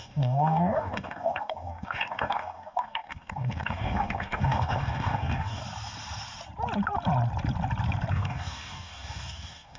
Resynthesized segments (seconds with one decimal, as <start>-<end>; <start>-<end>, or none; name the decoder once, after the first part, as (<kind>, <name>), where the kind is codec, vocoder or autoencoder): 0.0-5.6 (codec, DAC); 8.1-9.8